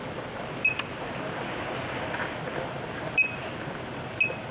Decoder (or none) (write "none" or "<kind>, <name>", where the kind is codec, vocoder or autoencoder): none